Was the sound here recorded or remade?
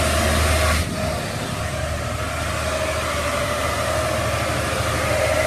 recorded